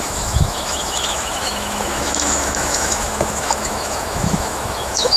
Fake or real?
fake